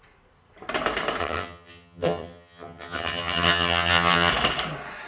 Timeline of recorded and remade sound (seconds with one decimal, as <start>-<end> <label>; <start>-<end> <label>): 0.0-1.2 recorded; 1.2-4.3 remade; 4.3-5.1 recorded